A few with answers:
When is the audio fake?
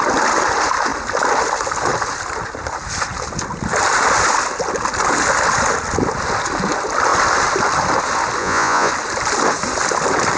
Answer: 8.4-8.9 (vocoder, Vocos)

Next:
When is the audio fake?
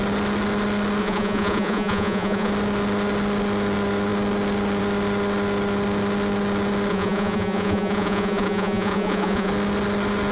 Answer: 1.0-2.5 (vocoder, Vocos); 6.9-9.5